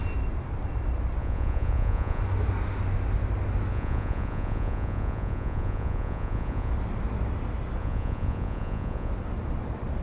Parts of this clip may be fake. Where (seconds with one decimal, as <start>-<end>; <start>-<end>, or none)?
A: 1.2-2.2; 3.7-6.7; 7.8-9.1